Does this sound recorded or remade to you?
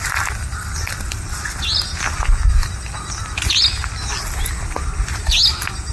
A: recorded